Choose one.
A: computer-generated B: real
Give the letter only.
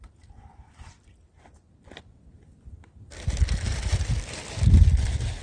B